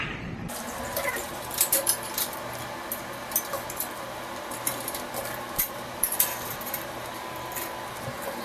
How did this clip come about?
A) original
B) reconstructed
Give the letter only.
B